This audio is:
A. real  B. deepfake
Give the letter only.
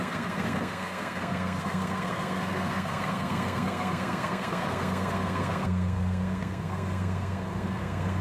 B